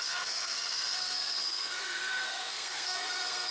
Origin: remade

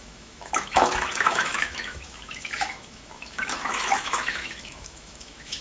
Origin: remade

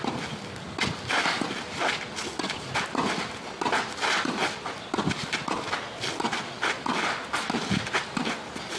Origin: recorded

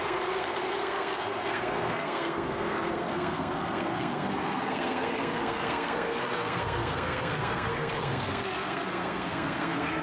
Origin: remade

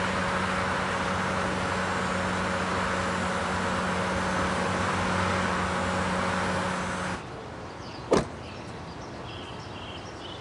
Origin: recorded